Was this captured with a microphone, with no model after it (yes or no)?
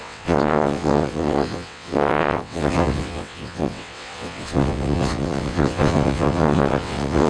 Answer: no